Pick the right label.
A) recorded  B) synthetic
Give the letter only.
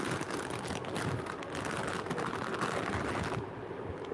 A